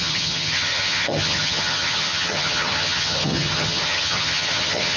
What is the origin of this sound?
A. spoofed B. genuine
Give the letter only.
A